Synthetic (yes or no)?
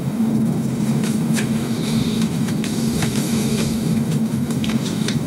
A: yes